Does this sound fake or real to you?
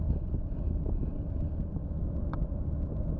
real